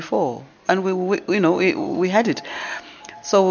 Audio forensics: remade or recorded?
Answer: recorded